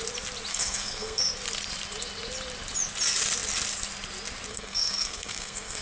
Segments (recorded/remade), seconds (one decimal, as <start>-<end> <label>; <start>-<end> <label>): 0.0-0.5 recorded; 0.5-1.2 remade; 1.2-4.5 recorded; 4.5-5.8 remade